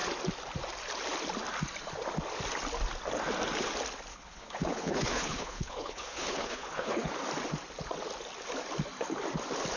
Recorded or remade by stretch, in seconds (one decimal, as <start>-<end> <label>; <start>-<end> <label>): 0.0-4.1 recorded; 4.1-7.1 remade; 7.1-9.8 recorded

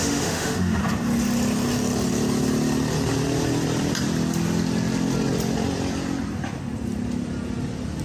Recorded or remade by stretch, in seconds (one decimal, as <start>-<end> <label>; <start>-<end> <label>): 0.0-0.8 remade; 0.8-8.0 recorded

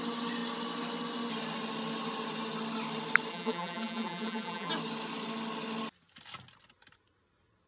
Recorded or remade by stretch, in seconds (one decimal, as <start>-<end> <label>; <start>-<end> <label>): 0.0-3.3 recorded; 3.3-4.7 remade; 4.7-7.7 recorded

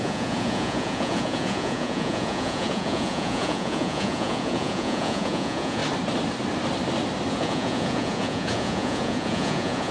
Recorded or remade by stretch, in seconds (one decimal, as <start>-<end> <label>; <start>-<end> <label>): 0.0-5.8 remade; 5.8-7.3 recorded; 7.3-9.9 remade

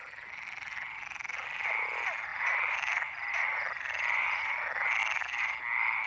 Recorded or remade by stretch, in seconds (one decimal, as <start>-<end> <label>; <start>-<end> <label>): 0.0-2.3 recorded; 2.3-4.4 remade; 4.4-6.1 recorded

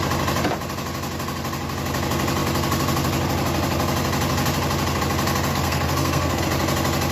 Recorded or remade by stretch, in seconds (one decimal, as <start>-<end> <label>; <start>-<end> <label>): 0.0-5.5 recorded; 5.5-6.4 remade; 6.4-7.1 recorded